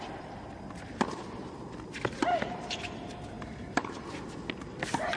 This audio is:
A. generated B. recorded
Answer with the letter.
B